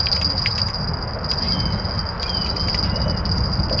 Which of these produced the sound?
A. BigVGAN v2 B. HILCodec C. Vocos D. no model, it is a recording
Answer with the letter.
D